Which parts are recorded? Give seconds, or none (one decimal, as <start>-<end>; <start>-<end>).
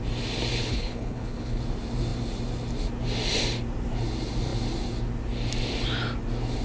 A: 0.0-0.6; 1.6-6.6